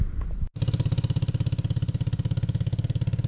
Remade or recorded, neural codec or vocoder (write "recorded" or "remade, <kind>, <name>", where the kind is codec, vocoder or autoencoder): recorded